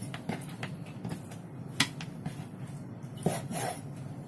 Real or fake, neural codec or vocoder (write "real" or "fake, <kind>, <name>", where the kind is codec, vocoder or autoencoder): real